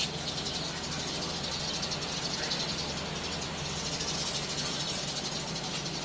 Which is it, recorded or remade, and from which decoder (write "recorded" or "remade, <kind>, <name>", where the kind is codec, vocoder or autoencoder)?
recorded